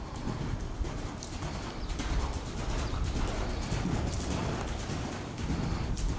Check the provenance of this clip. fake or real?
real